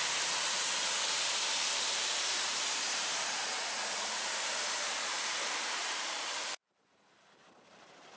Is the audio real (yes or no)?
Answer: no